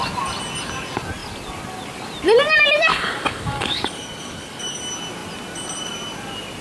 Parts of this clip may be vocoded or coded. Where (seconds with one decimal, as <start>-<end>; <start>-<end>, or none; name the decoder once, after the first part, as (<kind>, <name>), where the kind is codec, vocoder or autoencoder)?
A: 2.9-4.8 (codec, DAC)

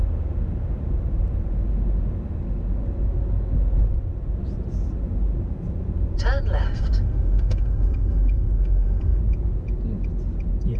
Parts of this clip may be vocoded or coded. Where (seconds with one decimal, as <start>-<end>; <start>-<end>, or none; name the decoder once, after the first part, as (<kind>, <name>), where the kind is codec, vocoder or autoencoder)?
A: 6.6-9.2 (codec, SNAC)

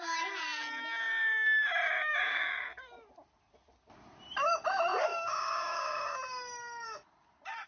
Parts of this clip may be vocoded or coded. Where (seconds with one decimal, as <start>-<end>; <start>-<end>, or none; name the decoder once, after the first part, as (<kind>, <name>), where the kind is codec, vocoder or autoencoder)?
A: 2.1-2.6 (codec, DAC); 5.1-6.2

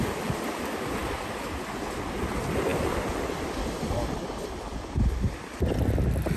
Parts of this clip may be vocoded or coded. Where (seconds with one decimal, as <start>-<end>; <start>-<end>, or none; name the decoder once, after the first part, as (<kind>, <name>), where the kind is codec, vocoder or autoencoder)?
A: 0.0-1.0 (vocoder, BigVGAN v2); 2.3-6.4

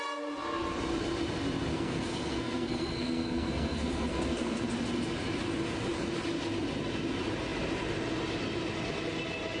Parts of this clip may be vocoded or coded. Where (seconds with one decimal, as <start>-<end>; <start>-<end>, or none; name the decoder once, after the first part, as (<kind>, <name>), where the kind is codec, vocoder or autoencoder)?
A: 1.7-4.6 (codec, SNAC)

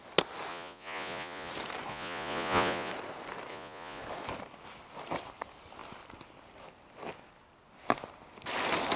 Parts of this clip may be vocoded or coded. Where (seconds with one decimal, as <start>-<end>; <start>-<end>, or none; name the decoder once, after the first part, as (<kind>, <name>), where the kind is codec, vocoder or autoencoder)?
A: 0.5-1.5 (vocoder, Vocos); 1.9-2.9; 3.5-4.0

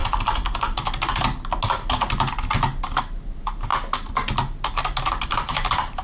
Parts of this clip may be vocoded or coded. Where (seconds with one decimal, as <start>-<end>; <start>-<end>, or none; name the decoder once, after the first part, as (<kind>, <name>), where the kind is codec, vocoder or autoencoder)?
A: 3.0-3.7 (vocoder, BigVGAN v2); 5.2-6.0